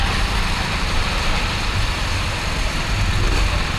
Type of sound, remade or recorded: recorded